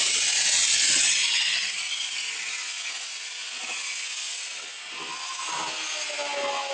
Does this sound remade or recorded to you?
recorded